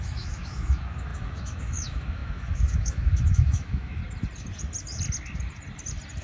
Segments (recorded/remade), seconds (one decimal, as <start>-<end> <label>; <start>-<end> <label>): 0.0-4.0 remade; 4.0-6.2 recorded